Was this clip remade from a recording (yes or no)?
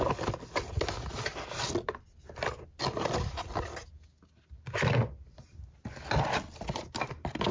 no